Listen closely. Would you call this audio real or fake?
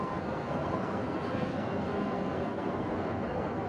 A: fake